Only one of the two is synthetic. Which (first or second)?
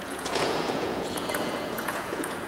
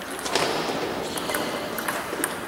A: first